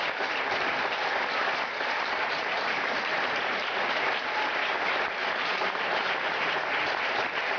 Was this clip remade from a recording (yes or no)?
yes